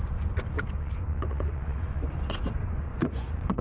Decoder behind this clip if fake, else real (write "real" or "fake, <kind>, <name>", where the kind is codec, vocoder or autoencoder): fake, vocoder, Vocos